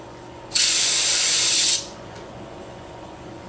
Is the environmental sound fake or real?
fake